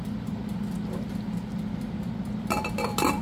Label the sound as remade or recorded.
recorded